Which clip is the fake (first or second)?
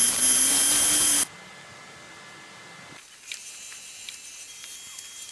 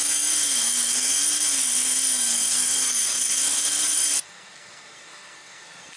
second